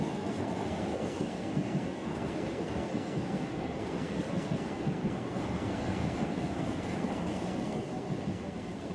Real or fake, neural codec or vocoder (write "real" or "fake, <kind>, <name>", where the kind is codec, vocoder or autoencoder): fake, codec, SNAC